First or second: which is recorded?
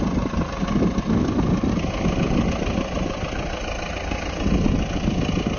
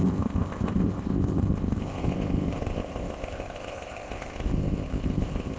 first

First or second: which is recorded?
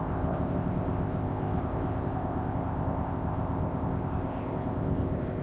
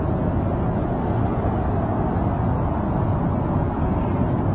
second